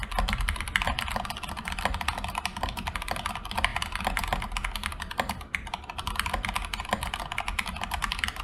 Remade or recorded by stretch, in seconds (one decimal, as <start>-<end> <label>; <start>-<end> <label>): 0.0-8.4 recorded